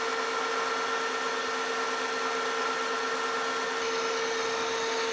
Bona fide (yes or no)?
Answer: yes